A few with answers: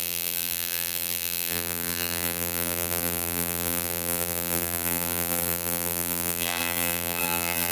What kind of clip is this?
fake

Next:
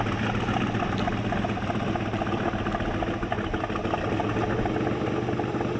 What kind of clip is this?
real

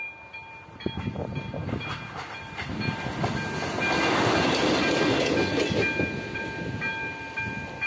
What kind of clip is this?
real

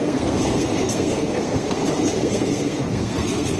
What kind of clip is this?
fake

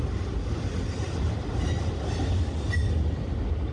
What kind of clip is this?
real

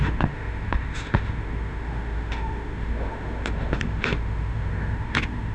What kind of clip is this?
fake